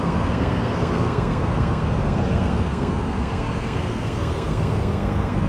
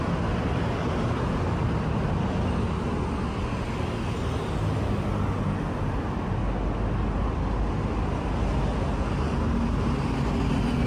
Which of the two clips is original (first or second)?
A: second